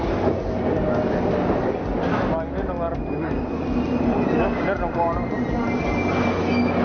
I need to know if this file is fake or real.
real